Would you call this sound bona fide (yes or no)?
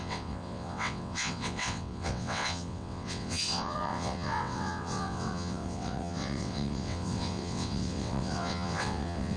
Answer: no